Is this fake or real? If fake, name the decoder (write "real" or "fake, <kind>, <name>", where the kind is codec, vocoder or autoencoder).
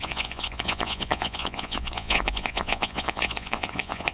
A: fake, vocoder, Vocos